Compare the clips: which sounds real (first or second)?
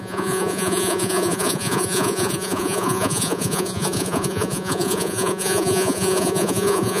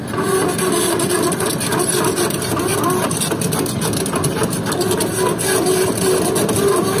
second